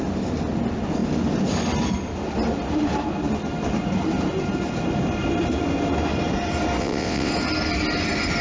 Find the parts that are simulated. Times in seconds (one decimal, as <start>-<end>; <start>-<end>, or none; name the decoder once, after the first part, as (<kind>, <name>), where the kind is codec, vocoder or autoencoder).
6.8-7.3 (vocoder, WaveNeXt)